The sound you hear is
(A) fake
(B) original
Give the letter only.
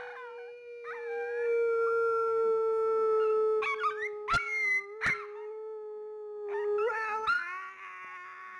B